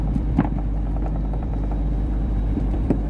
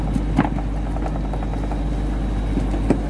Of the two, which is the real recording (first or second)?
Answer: second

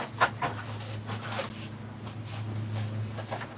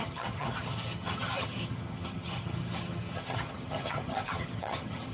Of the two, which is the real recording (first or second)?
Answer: first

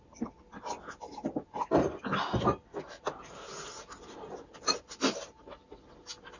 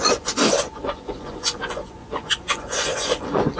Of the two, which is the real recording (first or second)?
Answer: first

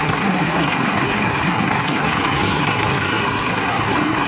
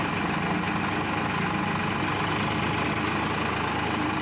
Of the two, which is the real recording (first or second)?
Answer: second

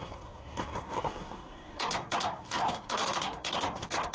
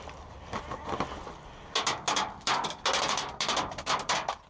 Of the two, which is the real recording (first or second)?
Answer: second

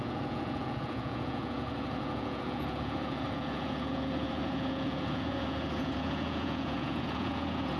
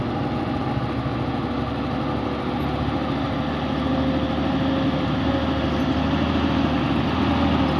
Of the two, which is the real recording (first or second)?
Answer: second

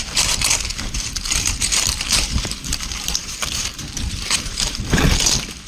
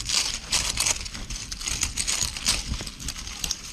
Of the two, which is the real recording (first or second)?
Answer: second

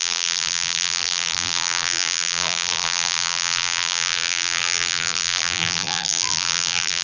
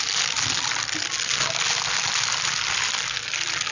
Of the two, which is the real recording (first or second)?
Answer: second